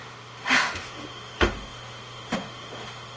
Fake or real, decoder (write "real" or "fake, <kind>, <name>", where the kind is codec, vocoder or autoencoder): fake, autoencoder, DAC-VAE